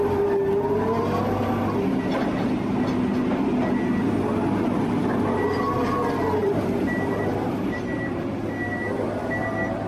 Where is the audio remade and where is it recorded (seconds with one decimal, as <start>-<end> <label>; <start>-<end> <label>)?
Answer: 0.0-6.4 recorded; 6.4-7.8 remade; 7.8-9.9 recorded